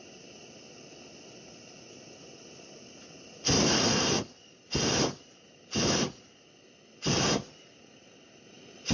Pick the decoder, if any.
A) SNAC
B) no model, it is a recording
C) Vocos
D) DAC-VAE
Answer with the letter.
B